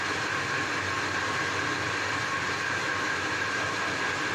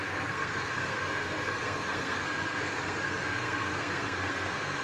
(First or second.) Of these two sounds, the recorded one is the first